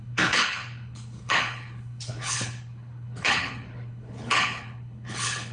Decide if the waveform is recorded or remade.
remade